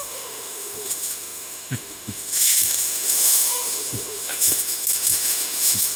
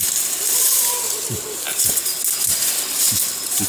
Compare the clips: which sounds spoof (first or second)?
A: first